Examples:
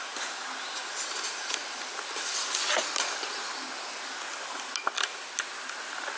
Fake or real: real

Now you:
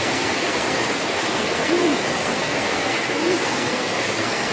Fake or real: fake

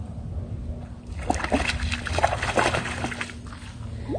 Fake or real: real